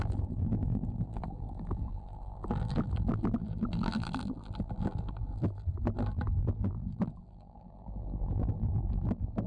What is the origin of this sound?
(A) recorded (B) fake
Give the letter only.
B